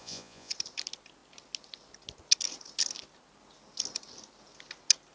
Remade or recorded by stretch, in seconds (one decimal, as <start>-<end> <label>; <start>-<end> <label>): 0.0-0.5 remade; 0.5-5.1 recorded